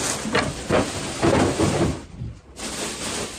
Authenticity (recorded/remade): recorded